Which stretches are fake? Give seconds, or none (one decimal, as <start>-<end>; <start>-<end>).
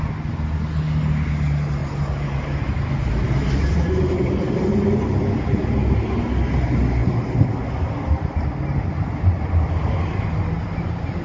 none